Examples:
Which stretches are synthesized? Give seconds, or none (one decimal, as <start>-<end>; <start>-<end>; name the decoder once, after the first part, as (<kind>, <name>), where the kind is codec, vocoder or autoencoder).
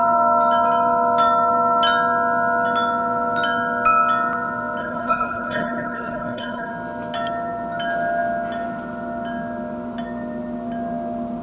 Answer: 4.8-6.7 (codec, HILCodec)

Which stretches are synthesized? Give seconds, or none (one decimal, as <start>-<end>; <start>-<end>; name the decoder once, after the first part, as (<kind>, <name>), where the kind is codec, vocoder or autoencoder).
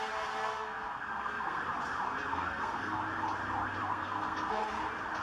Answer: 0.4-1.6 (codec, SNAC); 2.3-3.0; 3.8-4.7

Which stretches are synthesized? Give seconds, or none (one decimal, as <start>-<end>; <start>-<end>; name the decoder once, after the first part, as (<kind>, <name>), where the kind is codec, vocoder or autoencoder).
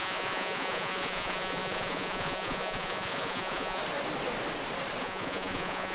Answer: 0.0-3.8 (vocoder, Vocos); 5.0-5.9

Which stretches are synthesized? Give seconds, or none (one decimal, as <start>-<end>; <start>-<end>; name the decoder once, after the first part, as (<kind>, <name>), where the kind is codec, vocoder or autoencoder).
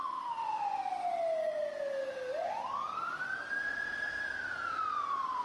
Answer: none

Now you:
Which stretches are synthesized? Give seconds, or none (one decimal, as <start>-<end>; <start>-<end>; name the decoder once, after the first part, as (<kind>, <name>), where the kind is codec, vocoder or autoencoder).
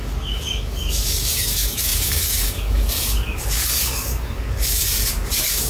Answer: 0.0-5.7 (codec, DAC)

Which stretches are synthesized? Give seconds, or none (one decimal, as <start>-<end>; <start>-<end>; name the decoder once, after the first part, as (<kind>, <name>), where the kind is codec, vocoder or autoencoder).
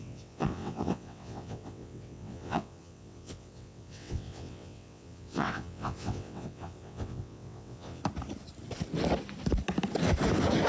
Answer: 0.0-8.0 (vocoder, WaveNeXt)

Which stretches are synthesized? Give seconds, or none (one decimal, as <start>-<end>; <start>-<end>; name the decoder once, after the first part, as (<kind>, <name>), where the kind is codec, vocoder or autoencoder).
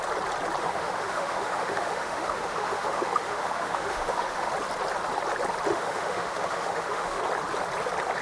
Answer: 0.6-4.5 (autoencoder, DAC-VAE); 5.7-7.2